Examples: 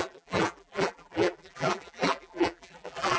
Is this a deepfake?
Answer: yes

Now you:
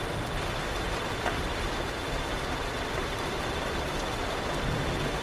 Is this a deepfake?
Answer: no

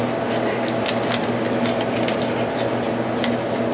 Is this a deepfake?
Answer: no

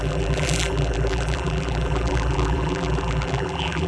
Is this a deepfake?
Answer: yes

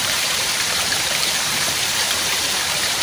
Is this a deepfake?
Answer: yes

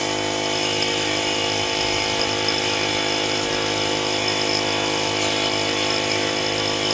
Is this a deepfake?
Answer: no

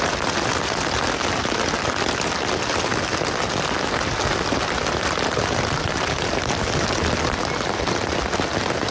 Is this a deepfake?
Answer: no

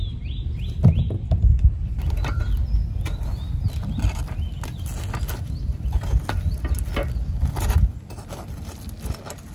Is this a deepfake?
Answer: no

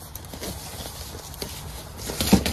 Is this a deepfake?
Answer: yes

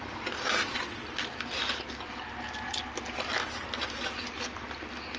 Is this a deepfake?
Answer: yes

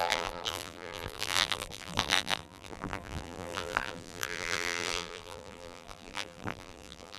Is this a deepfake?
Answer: yes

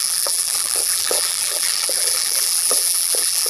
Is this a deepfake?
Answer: yes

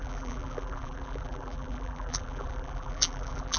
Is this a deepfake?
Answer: yes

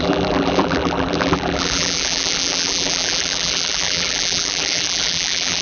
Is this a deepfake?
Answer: yes